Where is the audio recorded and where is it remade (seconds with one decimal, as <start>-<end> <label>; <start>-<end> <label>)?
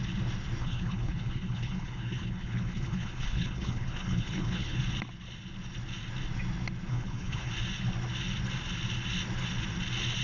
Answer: 0.0-0.6 recorded; 0.6-4.8 remade; 4.8-6.9 recorded; 6.9-7.5 remade; 7.5-10.2 recorded